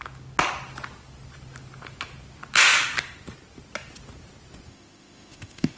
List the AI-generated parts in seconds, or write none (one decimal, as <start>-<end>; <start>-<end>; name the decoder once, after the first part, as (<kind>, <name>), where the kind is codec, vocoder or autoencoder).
4.7-5.8 (autoencoder, DAC-VAE)